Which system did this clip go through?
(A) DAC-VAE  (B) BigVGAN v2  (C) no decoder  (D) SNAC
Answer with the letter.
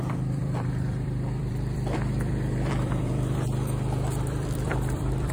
B